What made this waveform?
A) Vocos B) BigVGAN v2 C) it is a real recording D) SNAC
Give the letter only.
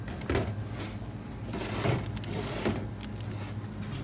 C